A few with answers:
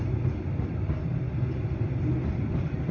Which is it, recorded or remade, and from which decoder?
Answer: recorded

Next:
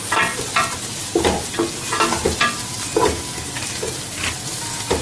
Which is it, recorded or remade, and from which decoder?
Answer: recorded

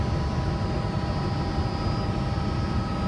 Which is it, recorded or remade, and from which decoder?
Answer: recorded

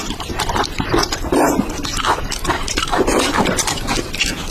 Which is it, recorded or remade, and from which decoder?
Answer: recorded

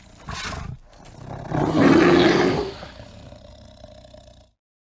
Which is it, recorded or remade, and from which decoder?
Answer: recorded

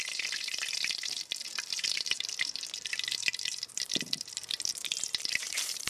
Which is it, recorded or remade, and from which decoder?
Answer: remade, vocoder, BigVGAN v2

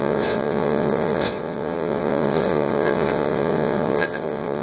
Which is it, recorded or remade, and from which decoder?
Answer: remade, vocoder, WaveNeXt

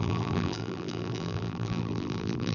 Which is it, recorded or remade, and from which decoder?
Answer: remade, vocoder, BigVGAN v2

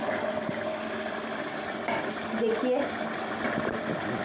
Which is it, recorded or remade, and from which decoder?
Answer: recorded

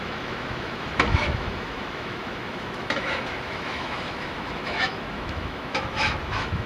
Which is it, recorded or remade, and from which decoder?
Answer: remade, autoencoder, DAC-VAE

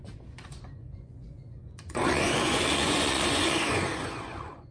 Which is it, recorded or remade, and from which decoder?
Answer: remade, vocoder, Vocos